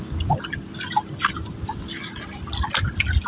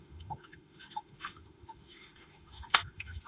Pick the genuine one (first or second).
first